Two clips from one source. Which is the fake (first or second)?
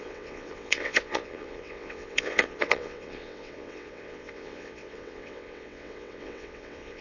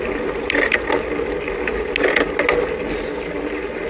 first